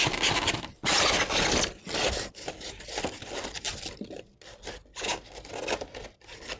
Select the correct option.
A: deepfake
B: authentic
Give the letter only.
B